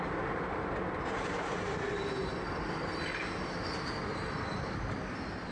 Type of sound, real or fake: real